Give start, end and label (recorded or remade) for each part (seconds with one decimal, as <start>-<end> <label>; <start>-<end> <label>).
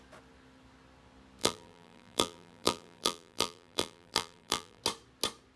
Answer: 0.0-1.4 recorded; 1.4-4.8 remade; 4.8-5.6 recorded